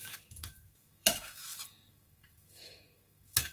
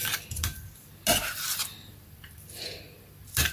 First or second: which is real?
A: second